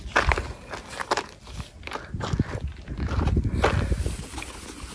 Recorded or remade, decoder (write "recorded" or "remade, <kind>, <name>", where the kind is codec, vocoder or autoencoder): recorded